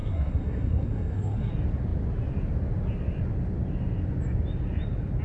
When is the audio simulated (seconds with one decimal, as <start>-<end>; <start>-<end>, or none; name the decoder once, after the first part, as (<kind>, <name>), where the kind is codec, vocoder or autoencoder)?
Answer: 0.0-1.5 (codec, SNAC)